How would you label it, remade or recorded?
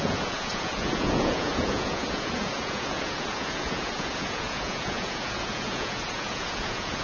remade